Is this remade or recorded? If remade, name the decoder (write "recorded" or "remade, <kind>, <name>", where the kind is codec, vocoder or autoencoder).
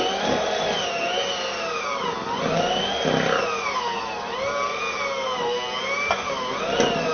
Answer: recorded